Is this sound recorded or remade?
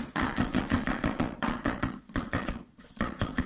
remade